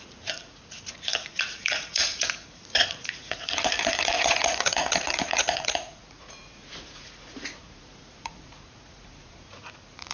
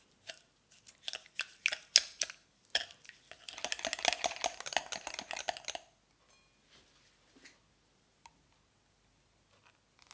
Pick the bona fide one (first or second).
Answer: second